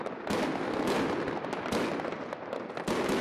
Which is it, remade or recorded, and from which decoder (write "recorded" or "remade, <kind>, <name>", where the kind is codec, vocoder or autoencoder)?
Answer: recorded